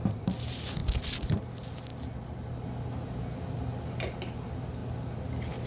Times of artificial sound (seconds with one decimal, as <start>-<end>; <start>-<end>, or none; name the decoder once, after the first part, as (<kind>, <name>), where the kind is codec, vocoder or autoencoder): none